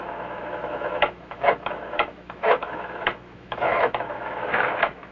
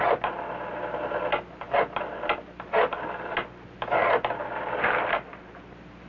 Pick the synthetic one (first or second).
first